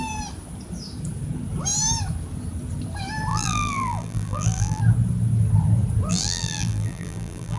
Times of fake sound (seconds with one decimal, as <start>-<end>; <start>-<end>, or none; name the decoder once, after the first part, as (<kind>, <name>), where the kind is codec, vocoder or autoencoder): 3.3-4.8 (vocoder, BigVGAN v2); 6.1-7.6